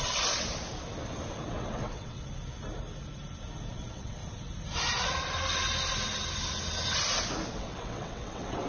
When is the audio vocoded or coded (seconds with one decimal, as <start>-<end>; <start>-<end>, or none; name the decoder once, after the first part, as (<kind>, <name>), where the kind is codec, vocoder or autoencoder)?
0.0-0.5 (vocoder, WaveNeXt); 1.4-2.3; 3.7-4.2; 7.5-8.7